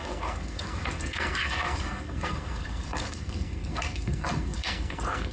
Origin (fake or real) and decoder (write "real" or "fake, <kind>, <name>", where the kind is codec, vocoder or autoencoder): fake, codec, SNAC